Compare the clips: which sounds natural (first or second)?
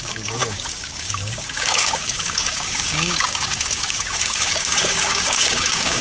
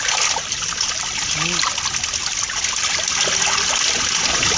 second